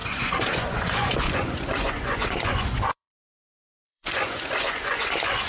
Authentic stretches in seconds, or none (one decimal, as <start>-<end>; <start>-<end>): none